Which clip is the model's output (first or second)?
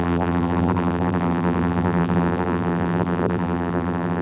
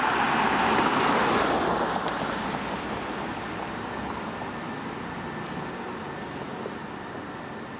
first